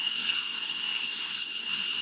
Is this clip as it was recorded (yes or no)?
no